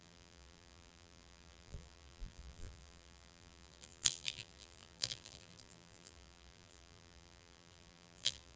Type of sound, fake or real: fake